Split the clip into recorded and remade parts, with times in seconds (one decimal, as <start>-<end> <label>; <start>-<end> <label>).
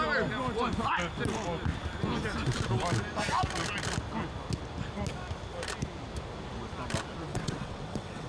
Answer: 0.0-7.3 recorded; 7.3-8.3 remade